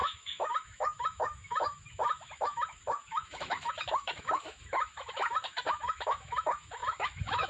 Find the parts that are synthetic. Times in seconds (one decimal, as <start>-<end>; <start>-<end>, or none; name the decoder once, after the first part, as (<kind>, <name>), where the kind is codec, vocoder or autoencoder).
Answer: 0.0-7.5 (autoencoder, DAC-VAE)